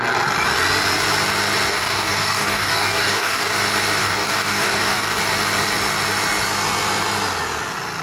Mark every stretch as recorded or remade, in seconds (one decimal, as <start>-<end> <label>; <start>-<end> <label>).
0.0-1.7 recorded; 1.7-3.5 remade; 3.5-4.0 recorded; 4.0-5.2 remade; 5.2-8.0 recorded